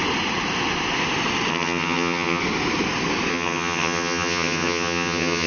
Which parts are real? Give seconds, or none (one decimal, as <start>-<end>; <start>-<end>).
0.0-1.5; 2.4-3.3